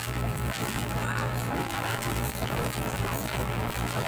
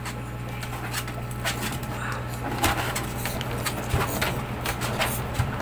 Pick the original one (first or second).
second